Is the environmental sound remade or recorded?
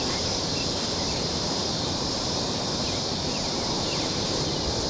remade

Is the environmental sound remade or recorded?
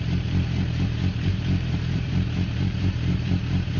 remade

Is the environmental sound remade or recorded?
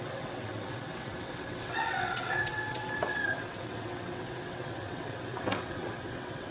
remade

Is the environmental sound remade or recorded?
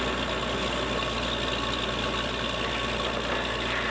recorded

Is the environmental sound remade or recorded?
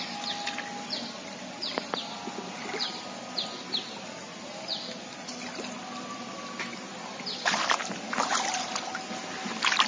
recorded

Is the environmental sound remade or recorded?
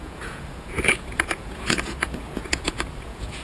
remade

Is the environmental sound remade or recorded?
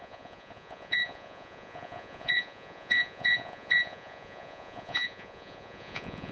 remade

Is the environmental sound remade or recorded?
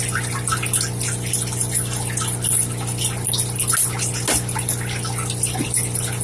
recorded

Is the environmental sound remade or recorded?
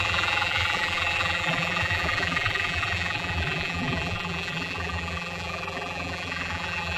remade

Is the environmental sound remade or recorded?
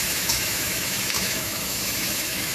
remade